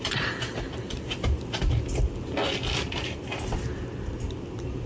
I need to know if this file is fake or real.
real